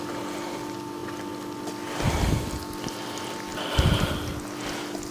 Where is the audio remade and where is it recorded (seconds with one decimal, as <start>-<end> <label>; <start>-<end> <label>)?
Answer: 0.0-5.1 recorded